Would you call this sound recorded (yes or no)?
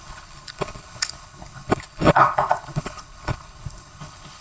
no